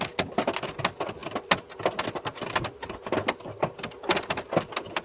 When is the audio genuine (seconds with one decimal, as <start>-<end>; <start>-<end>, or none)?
0.0-5.0